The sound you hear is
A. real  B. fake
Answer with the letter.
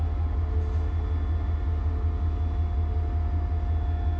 A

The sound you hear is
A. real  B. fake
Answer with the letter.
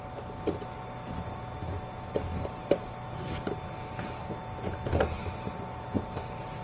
A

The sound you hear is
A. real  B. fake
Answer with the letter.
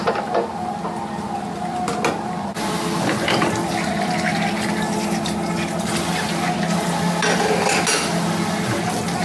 A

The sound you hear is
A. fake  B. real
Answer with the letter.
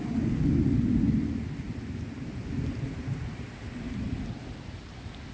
B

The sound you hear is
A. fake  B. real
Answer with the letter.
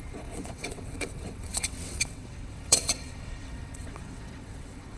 A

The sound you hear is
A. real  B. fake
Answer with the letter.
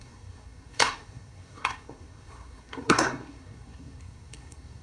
B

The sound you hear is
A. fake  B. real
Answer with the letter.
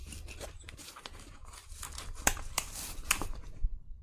A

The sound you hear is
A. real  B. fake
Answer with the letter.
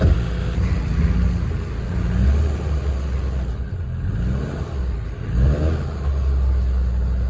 A